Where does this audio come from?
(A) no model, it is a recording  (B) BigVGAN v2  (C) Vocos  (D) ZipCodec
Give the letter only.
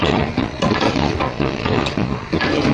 C